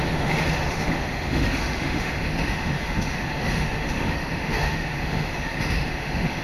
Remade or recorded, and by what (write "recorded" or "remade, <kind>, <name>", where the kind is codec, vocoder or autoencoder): remade, autoencoder, DAC-VAE